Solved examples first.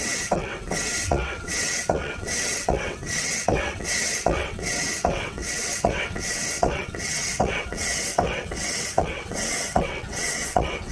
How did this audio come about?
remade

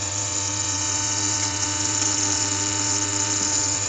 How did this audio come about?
remade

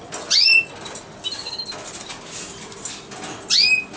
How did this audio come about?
recorded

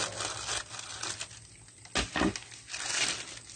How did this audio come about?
recorded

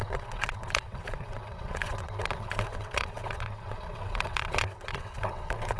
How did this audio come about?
remade